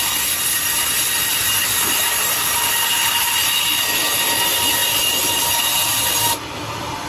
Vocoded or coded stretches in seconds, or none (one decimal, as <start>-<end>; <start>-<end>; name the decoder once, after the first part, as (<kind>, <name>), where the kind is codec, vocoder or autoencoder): 0.0-4.8 (vocoder, BigVGAN v2); 6.3-7.1

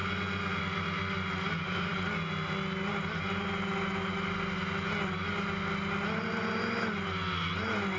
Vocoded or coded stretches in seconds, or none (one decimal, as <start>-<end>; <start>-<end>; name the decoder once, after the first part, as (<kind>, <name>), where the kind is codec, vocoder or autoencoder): none

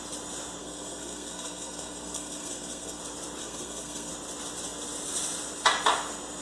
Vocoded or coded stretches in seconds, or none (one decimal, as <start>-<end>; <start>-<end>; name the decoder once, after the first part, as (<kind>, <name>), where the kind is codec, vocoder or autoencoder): 0.6-3.0 (codec, SNAC); 3.4-4.1

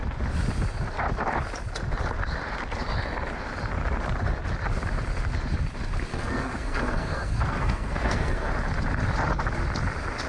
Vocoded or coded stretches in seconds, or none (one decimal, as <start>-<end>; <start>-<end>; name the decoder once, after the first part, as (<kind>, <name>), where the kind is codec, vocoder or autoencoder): 6.1-8.5 (codec, SNAC)